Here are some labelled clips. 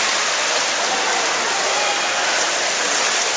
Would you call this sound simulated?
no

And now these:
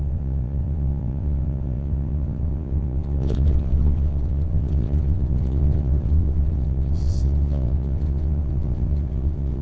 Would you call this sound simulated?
yes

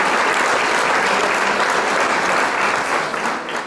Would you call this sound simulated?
no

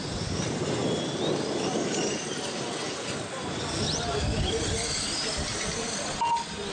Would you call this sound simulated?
no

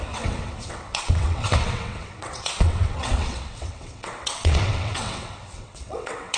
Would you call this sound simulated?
yes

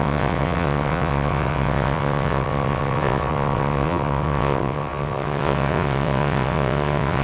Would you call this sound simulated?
yes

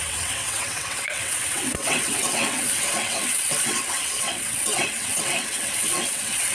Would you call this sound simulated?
yes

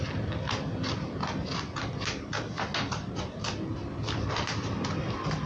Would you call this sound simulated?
no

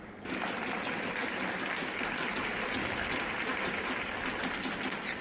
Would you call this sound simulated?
no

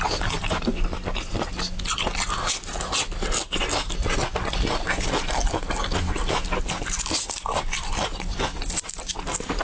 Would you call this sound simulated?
no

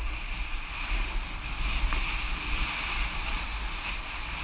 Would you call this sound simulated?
no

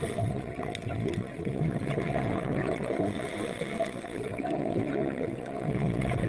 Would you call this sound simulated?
yes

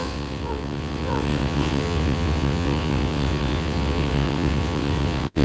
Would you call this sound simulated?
yes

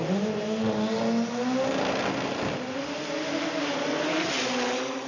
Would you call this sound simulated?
no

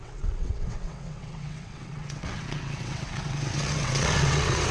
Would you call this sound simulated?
yes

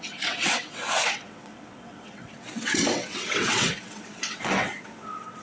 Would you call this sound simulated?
yes